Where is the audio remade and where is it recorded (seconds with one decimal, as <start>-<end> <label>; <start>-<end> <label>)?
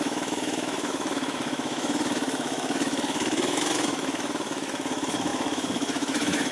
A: 0.0-6.5 remade